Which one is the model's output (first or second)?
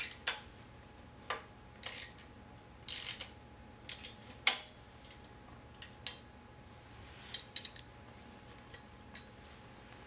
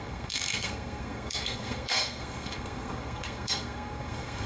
second